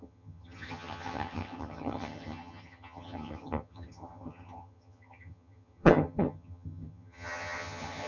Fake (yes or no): yes